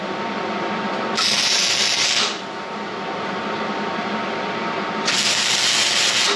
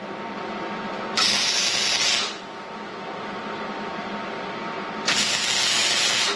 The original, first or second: second